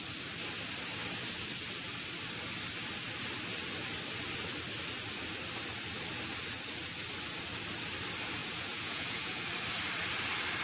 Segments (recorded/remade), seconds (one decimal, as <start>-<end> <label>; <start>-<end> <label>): 0.0-8.4 recorded; 8.4-9.4 remade; 9.4-10.6 recorded